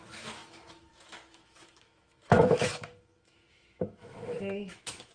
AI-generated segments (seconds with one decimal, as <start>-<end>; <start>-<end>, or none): 0.0-5.1